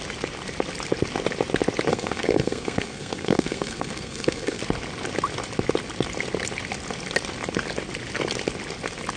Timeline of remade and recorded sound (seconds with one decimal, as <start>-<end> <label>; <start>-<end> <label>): 0.0-1.9 recorded; 1.9-4.6 remade; 4.6-9.2 recorded